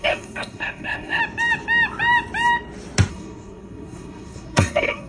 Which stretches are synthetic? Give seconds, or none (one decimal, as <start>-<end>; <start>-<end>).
0.0-1.2; 3.1-5.1